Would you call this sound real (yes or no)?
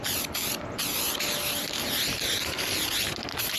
yes